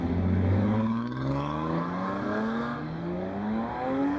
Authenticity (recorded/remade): remade